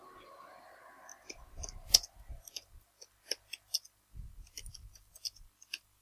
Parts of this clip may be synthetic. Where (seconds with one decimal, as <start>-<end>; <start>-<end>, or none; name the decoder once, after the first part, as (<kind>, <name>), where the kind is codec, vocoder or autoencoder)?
none